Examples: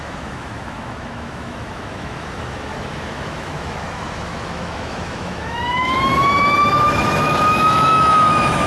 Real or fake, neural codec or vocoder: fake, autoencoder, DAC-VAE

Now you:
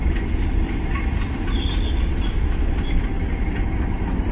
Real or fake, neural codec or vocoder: real